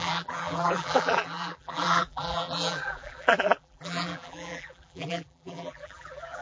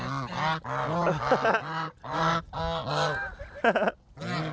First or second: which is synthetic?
first